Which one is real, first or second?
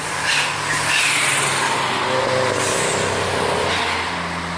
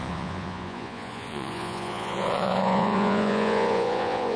first